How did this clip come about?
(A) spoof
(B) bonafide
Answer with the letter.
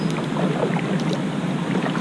B